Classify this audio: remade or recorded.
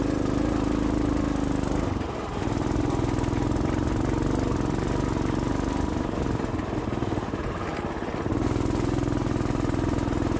recorded